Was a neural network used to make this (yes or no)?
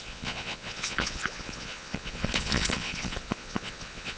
yes